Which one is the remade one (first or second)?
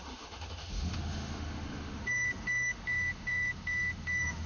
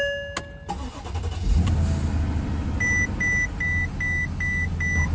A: first